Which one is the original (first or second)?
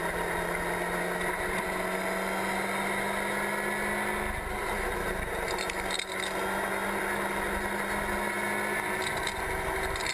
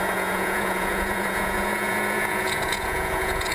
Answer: first